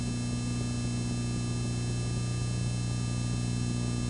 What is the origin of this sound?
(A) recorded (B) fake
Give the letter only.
A